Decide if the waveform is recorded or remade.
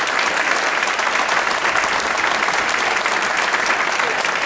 remade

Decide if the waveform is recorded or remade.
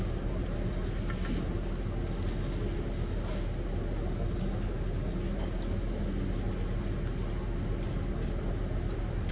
recorded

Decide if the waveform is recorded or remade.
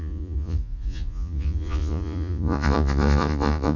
remade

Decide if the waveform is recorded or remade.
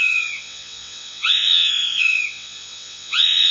remade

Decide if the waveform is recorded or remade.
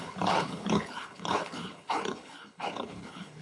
remade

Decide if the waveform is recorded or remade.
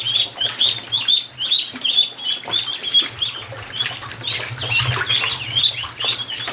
recorded